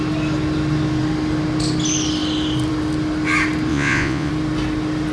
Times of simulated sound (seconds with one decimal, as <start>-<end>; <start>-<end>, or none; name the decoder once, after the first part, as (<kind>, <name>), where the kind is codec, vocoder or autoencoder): 3.7-4.3 (vocoder, Vocos)